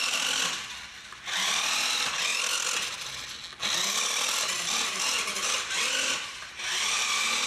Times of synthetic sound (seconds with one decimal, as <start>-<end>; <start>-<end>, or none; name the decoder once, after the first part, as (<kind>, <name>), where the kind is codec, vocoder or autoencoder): none